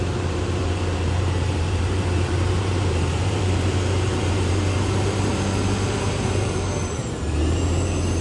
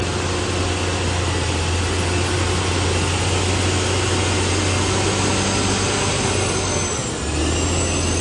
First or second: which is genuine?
second